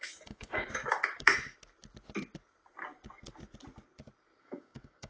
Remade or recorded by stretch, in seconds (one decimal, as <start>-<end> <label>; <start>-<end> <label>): 0.0-1.3 remade; 1.3-4.4 recorded; 4.4-5.1 remade